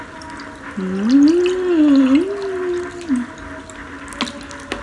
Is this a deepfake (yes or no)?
no